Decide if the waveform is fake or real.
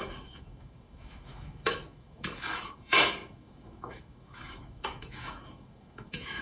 fake